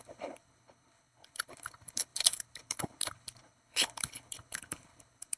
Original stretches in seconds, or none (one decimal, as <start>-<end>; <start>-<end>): none